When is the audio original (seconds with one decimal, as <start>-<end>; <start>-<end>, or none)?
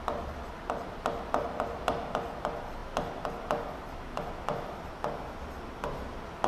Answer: 0.0-6.5